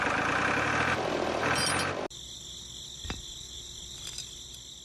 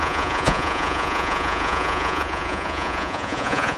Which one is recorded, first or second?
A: first